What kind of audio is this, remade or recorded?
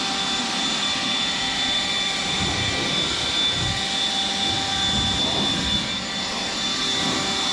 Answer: recorded